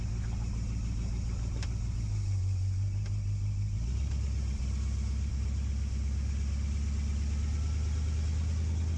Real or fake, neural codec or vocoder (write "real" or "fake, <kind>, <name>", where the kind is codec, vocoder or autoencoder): real